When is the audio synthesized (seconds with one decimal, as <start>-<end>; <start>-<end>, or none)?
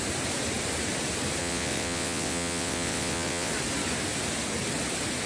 1.4-3.5